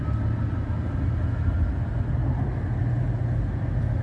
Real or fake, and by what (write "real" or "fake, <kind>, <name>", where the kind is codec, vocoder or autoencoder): real